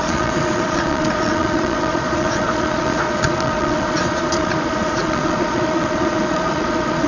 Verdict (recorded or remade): remade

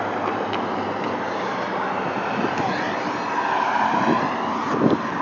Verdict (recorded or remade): recorded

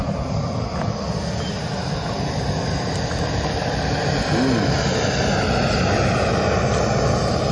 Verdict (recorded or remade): recorded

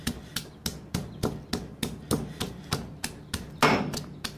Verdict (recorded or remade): recorded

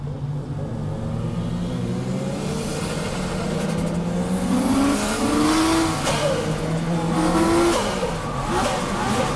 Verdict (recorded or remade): recorded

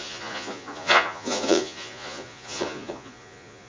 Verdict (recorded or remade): remade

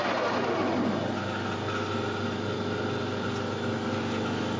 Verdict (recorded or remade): recorded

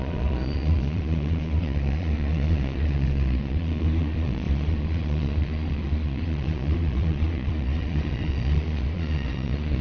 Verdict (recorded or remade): remade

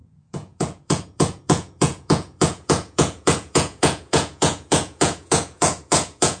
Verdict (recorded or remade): remade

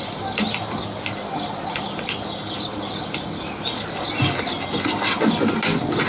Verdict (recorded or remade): recorded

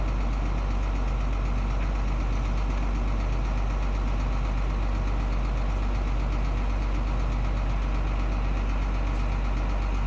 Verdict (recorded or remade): recorded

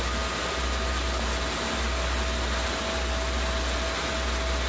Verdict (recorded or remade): recorded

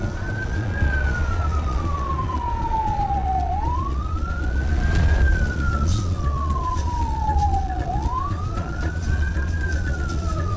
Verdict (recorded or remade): remade